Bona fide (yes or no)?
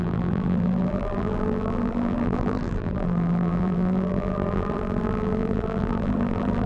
no